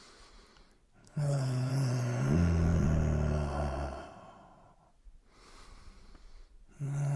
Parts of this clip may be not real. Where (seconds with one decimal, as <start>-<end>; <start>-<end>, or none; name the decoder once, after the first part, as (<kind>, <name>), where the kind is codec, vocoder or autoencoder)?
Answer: 1.0-1.7 (codec, HILCodec)